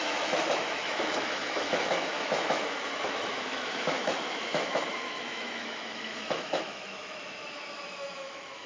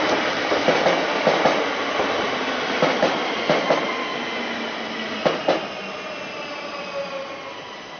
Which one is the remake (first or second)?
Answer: first